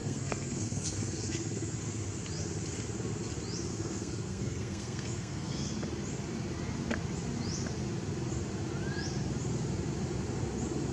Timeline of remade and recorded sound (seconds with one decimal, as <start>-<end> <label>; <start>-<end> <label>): 0.0-1.8 remade; 1.8-3.7 recorded; 3.7-5.7 remade; 5.7-10.9 recorded